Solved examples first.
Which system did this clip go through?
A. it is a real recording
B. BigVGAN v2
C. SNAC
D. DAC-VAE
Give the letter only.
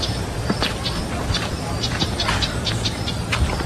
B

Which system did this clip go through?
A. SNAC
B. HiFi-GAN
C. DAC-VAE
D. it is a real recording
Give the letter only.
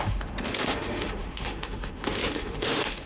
C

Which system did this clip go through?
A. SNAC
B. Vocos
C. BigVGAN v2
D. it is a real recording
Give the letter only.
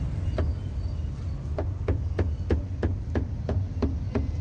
D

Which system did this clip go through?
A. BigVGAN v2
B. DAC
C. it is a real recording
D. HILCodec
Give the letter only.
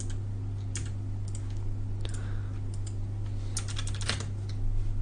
C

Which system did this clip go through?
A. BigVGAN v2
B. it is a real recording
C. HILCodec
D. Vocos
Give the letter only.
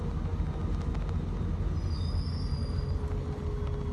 B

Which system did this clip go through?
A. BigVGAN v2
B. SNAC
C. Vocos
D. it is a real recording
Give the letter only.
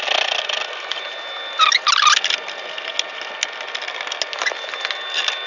D